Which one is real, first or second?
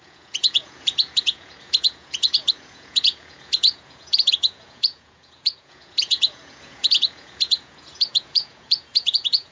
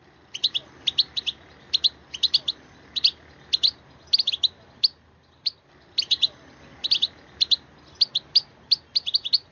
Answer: second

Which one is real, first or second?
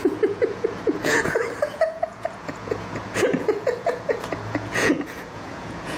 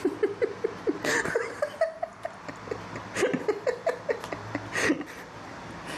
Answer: second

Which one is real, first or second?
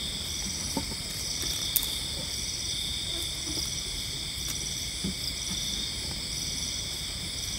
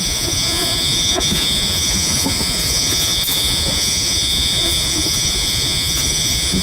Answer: first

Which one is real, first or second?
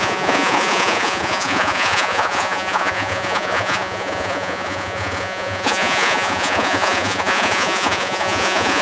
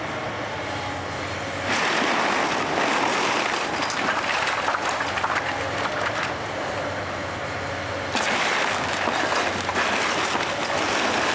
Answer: second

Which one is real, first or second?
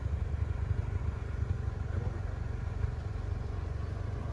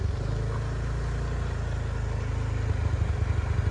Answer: second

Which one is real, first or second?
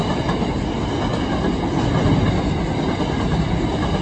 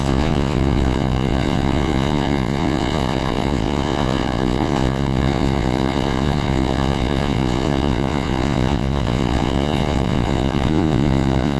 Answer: first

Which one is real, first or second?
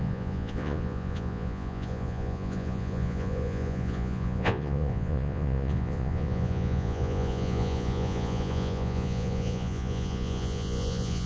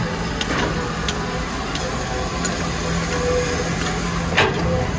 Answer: second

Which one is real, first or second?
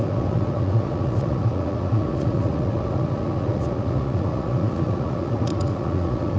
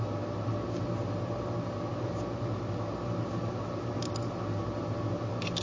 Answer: second